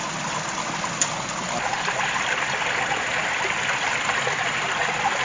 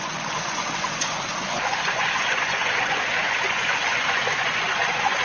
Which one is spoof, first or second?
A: second